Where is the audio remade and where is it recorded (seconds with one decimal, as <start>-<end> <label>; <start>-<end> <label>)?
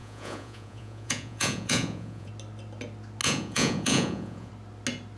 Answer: 0.0-2.3 remade; 2.3-3.2 recorded; 3.2-4.5 remade; 4.5-5.2 recorded